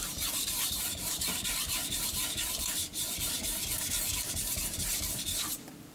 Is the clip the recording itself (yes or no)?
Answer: no